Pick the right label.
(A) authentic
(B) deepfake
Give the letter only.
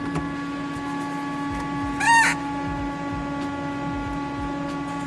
A